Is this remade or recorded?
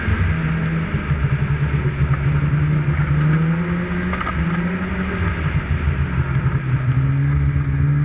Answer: recorded